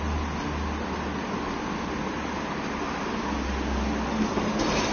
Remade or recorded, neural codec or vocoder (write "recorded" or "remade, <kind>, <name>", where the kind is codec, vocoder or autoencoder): recorded